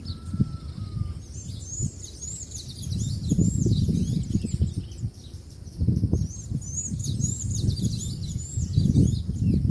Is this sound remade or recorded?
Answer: recorded